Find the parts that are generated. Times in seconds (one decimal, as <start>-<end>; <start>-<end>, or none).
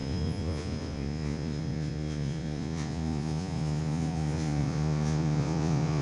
0.0-6.0